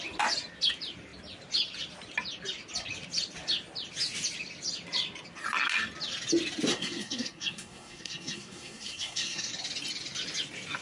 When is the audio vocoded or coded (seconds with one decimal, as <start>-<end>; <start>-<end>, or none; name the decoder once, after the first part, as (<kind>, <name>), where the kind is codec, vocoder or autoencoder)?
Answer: 6.7-9.5 (codec, SNAC)